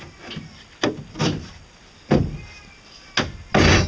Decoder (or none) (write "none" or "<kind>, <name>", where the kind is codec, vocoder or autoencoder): none